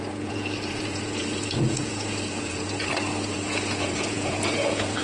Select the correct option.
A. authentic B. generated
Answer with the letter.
B